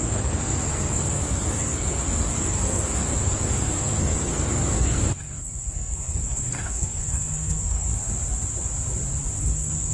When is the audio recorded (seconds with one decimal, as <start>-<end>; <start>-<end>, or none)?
7.9-9.4